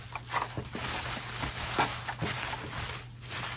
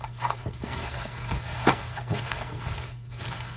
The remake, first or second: second